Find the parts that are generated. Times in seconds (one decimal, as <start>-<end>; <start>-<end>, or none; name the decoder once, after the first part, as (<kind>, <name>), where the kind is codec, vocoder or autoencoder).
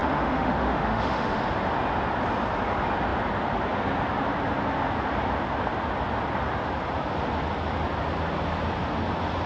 0.0-1.4 (autoencoder, DAC-VAE)